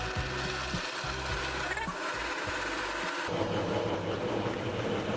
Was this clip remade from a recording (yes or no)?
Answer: no